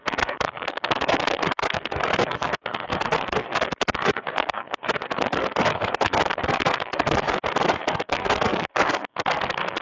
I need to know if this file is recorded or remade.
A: remade